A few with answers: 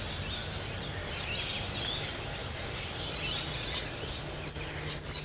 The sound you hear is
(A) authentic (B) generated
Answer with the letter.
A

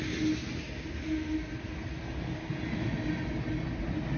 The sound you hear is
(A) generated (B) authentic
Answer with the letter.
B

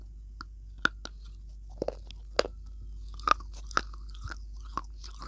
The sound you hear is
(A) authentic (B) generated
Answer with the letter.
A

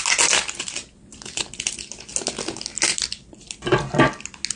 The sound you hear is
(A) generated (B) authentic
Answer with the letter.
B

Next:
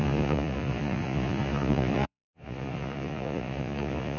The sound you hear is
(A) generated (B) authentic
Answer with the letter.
A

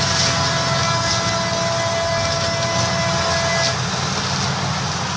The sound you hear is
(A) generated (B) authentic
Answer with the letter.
B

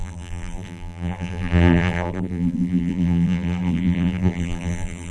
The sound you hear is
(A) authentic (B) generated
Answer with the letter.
B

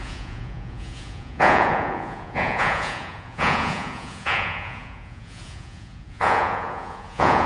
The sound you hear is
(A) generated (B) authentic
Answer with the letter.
A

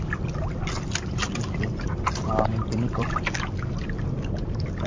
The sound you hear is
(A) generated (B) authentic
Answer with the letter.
B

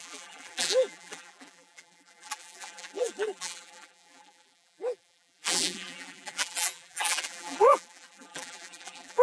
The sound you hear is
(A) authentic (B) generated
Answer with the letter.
B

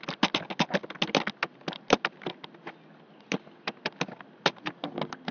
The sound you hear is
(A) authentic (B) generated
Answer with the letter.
A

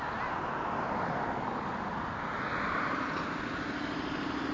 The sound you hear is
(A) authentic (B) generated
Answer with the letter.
A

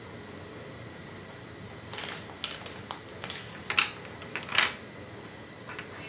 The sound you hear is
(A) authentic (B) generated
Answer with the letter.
A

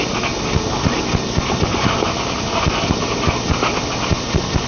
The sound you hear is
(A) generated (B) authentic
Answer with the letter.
B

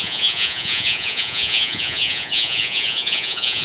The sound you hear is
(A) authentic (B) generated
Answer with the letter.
B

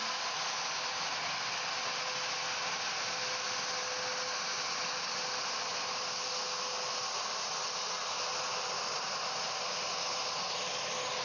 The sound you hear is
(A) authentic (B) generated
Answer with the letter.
A